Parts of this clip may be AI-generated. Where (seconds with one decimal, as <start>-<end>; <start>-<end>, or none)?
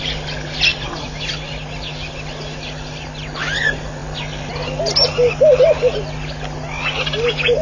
none